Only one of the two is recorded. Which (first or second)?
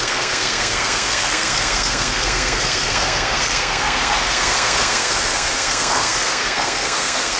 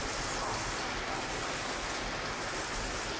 second